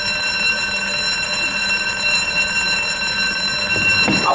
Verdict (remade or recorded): remade